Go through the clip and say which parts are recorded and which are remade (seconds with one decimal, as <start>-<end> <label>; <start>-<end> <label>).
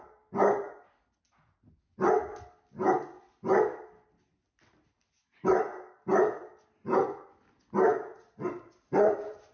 0.0-9.5 recorded